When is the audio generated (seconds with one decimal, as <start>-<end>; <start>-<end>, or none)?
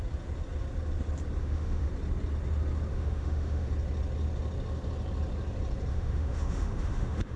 1.4-1.9; 2.9-3.7; 5.9-7.4